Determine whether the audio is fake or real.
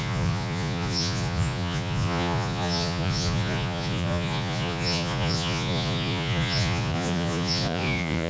fake